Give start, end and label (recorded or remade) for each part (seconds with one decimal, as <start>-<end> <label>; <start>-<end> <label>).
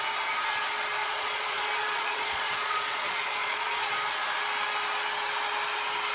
0.0-1.0 recorded; 1.0-3.8 remade; 3.8-6.1 recorded